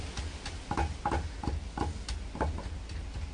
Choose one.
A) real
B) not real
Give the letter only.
A